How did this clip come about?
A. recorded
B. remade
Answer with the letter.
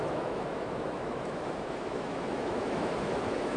B